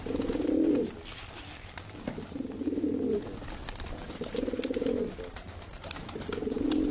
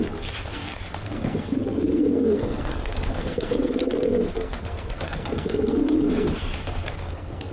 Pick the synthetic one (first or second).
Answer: second